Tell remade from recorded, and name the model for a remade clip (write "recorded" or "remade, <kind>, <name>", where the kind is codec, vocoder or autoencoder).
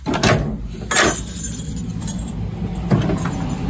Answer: recorded